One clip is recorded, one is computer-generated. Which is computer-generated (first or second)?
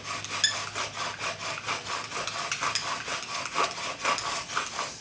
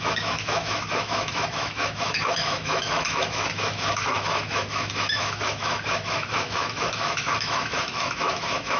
second